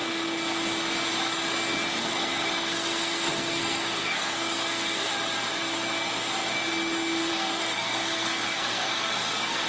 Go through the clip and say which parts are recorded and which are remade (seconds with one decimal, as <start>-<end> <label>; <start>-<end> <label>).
0.0-2.0 recorded; 2.0-5.1 remade; 5.1-7.3 recorded; 7.3-9.7 remade